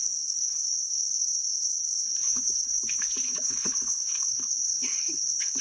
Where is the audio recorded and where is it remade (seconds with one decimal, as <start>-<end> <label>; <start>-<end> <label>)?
0.0-5.6 remade